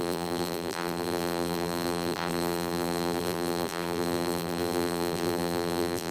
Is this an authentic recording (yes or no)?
no